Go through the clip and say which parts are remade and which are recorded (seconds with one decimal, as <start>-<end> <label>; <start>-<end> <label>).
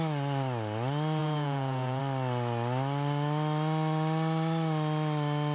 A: 0.0-1.2 recorded; 1.2-2.0 remade; 2.0-5.5 recorded